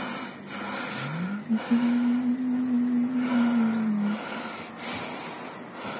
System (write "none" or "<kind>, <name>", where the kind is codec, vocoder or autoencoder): none